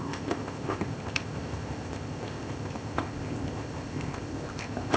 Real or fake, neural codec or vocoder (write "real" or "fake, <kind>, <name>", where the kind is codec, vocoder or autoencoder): fake, codec, ZipCodec